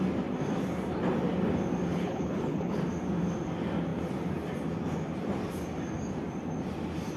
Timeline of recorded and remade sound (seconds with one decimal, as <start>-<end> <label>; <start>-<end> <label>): 0.0-1.9 recorded; 1.9-2.8 remade; 2.8-7.2 recorded

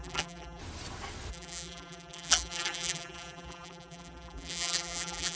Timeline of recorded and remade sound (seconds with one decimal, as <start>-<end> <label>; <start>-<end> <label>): 0.0-0.6 remade; 0.6-1.3 recorded; 1.3-5.4 remade